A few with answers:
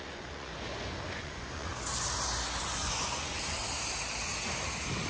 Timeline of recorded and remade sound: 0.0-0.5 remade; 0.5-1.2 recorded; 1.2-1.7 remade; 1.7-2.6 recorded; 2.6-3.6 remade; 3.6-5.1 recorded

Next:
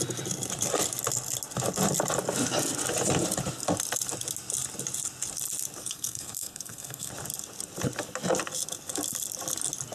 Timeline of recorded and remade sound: 0.0-5.8 recorded; 5.8-7.1 remade; 7.1-9.9 recorded

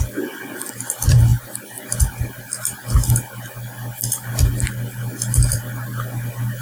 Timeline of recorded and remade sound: 0.0-6.6 recorded

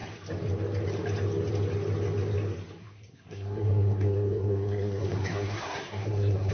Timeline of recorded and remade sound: 0.0-2.8 recorded; 2.8-6.5 remade

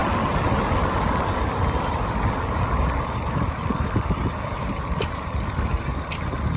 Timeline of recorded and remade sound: 0.0-6.6 remade

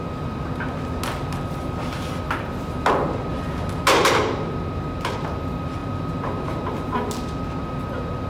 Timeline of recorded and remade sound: 0.0-8.3 recorded